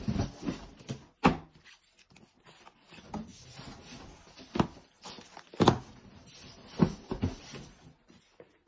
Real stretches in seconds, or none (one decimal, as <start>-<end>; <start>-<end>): 0.0-8.7